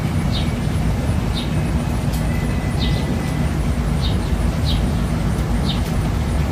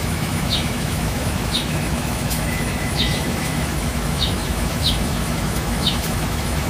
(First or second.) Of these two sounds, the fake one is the second